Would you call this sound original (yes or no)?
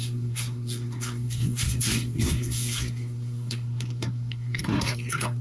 no